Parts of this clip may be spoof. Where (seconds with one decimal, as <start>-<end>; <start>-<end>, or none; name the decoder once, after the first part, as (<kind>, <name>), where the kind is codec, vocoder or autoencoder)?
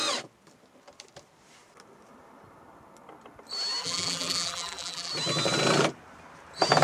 3.8-5.1 (vocoder, BigVGAN v2)